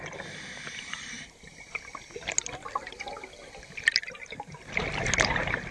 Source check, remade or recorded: recorded